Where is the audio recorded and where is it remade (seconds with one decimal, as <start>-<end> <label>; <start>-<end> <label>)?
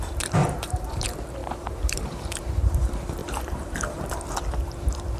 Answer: 0.0-0.4 recorded; 0.4-1.0 remade; 1.0-1.4 recorded; 1.4-2.5 remade; 2.5-3.2 recorded; 3.2-4.1 remade; 4.1-5.2 recorded